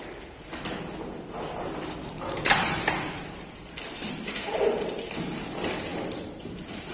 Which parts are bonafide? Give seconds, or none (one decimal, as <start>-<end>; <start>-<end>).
0.0-6.9